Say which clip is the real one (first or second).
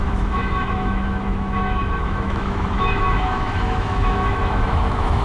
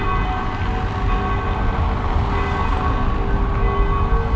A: second